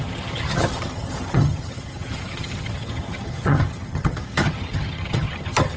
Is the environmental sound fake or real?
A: fake